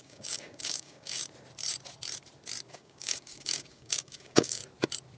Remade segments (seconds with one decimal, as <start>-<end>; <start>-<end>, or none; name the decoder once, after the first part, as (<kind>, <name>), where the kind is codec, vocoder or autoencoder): 0.0-1.2 (codec, DAC); 2.7-4.6